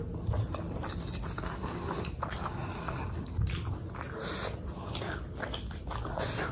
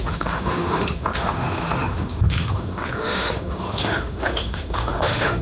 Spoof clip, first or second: second